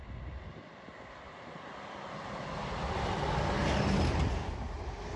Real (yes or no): yes